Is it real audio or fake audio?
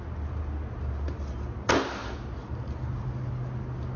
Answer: real